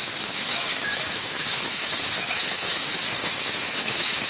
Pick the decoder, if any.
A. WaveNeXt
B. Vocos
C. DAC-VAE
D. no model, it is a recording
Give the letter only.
C